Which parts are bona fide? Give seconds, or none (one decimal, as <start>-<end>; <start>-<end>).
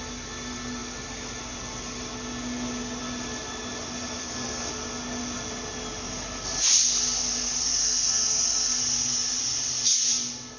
0.0-4.2; 4.7-7.8; 8.8-10.6